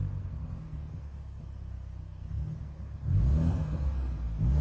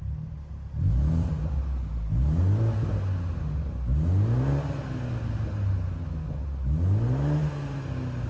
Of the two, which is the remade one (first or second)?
first